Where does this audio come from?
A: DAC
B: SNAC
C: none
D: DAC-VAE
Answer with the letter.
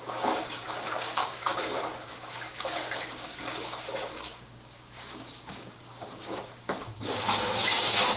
A